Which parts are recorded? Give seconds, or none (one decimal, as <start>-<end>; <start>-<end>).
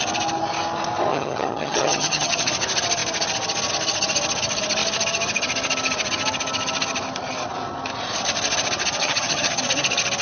0.0-1.1; 2.5-9.0; 9.6-10.2